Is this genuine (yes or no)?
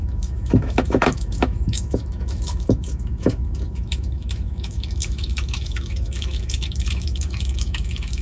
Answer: no